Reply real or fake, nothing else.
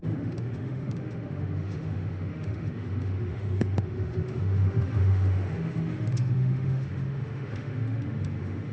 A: fake